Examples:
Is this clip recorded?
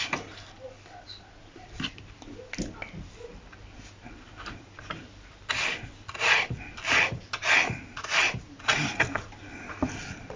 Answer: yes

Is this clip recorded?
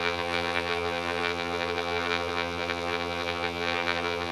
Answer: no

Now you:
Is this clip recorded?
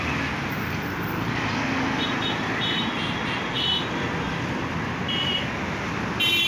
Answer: yes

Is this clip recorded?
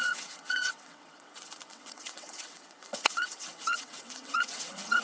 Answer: no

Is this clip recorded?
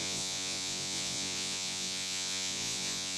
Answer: no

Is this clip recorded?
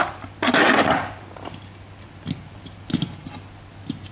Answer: yes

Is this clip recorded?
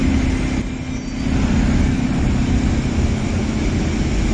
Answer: yes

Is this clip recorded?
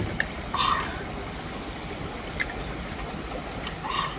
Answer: yes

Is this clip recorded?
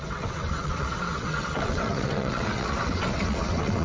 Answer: no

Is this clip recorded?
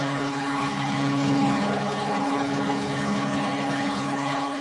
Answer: no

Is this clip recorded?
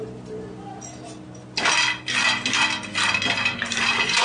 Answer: yes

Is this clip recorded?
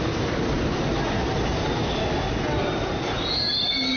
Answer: yes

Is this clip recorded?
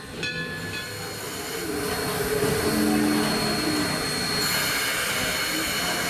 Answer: yes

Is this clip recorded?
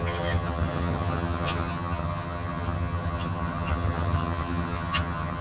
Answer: no